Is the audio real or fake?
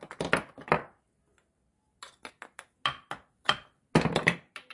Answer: real